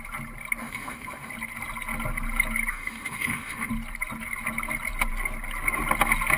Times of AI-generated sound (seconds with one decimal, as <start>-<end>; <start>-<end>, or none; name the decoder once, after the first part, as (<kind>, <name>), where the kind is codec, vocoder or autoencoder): 0.6-1.3 (autoencoder, DAC-VAE); 2.7-3.7